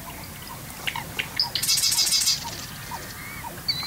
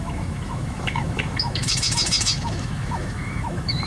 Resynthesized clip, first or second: second